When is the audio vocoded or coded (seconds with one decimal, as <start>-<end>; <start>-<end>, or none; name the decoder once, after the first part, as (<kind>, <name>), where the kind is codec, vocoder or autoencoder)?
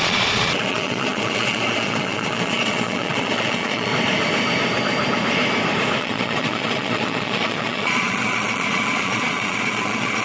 0.0-3.9 (vocoder, Vocos); 6.0-10.2